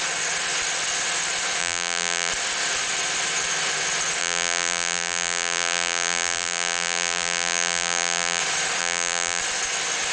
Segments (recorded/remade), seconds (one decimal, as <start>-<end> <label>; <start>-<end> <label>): 0.0-1.6 recorded; 1.6-2.3 remade; 2.3-4.2 recorded; 4.2-8.4 remade; 8.4-8.8 recorded; 8.8-9.4 remade; 9.4-10.1 recorded